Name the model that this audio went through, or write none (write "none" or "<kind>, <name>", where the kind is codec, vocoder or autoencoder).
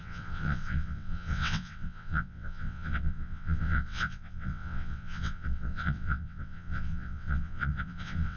vocoder, WaveNeXt